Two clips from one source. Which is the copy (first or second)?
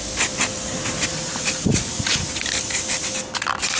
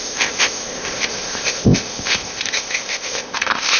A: second